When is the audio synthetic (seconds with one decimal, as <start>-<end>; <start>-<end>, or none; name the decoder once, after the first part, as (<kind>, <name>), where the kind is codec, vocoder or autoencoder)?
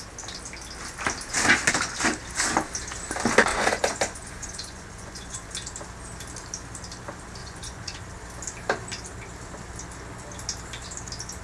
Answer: 3.5-5.5 (vocoder, Vocos); 7.4-8.0